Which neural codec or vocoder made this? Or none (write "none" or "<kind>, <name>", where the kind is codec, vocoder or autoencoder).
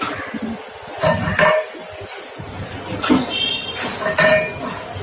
none